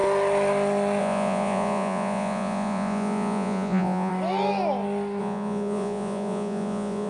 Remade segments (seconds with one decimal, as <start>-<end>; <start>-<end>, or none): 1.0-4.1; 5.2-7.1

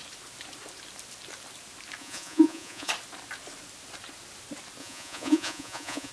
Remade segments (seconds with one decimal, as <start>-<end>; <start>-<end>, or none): 2.0-2.9; 4.8-6.1

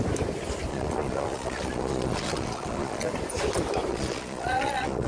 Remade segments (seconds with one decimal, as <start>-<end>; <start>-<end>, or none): 0.7-3.1; 3.9-5.1